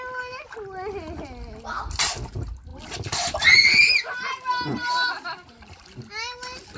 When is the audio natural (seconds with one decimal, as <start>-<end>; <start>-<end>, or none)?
0.0-2.7; 6.1-6.8